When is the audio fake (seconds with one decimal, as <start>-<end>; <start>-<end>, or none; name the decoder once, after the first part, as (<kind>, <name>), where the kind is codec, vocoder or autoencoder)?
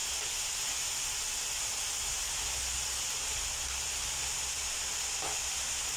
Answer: none